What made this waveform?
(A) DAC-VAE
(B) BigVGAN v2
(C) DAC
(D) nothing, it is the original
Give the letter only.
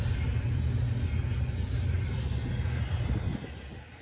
D